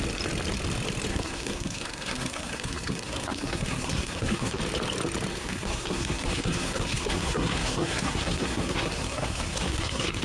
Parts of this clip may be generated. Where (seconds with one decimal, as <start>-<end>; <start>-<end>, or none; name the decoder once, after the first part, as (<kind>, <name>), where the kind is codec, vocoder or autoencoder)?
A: 1.1-4.6 (codec, SNAC); 5.3-10.2